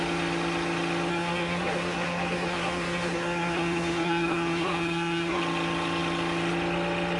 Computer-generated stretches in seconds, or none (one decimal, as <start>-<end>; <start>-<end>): 1.1-5.4